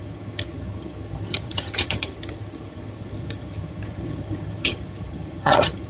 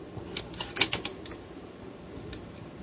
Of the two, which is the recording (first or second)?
second